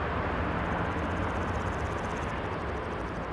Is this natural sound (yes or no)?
yes